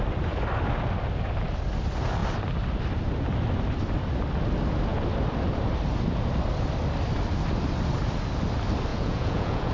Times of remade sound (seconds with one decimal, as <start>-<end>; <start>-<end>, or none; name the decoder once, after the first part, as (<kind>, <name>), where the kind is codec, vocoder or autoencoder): 8.9-9.7 (vocoder, Vocos)